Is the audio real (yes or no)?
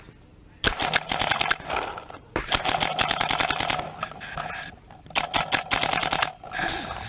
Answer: yes